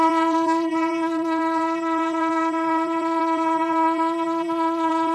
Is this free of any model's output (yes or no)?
no